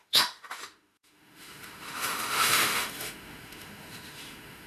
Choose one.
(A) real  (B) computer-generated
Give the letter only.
B